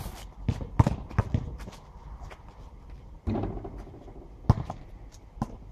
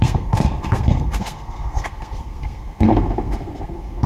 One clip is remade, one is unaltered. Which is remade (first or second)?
second